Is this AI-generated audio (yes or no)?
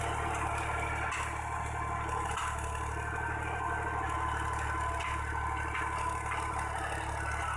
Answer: no